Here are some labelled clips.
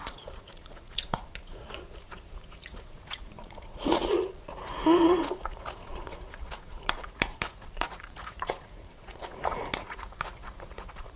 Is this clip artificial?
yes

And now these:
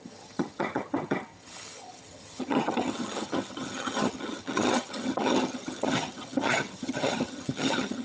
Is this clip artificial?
yes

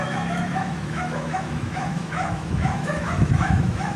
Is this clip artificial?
yes